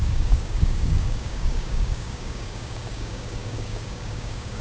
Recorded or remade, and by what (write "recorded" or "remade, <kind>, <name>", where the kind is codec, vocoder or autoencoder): remade, codec, DAC